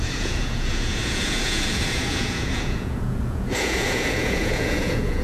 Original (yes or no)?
no